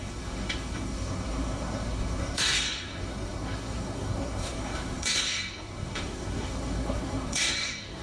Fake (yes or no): yes